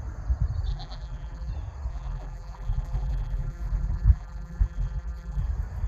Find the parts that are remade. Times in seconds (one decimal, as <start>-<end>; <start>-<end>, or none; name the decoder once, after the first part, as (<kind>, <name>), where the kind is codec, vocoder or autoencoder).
0.7-1.5 (vocoder, BigVGAN v2); 1.9-5.4